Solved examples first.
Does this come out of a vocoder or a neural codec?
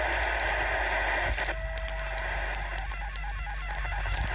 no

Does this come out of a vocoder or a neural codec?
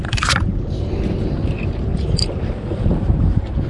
yes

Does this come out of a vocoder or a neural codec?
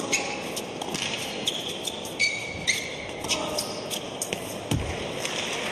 no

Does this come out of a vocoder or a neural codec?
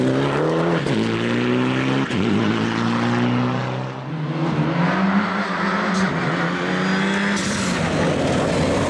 no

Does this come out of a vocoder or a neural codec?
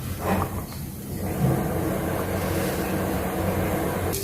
no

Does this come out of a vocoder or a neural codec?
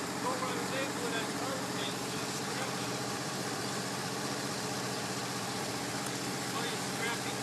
yes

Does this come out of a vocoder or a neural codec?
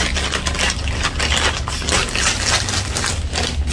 no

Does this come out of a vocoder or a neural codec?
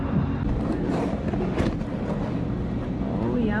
no